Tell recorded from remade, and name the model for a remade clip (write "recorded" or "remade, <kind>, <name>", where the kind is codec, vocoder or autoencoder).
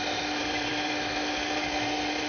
recorded